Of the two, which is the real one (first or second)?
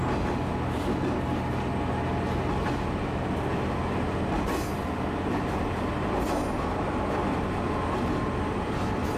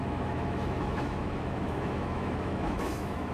first